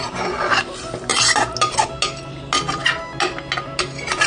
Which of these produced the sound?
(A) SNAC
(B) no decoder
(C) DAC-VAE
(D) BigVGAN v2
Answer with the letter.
B